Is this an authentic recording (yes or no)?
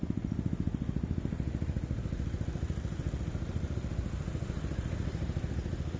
yes